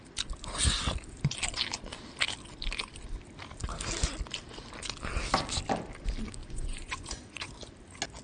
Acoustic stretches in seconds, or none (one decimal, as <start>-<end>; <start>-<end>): 0.0-6.4; 7.5-8.2